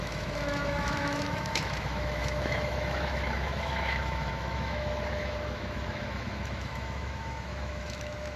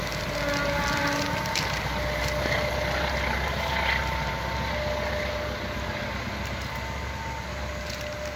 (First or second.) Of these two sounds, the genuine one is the second